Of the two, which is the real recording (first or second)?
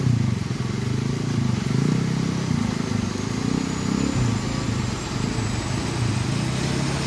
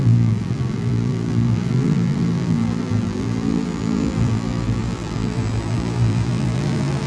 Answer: first